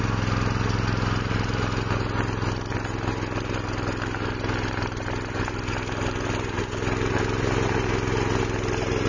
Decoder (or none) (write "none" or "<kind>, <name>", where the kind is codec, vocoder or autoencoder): none